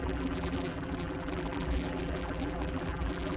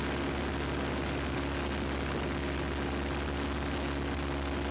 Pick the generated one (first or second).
first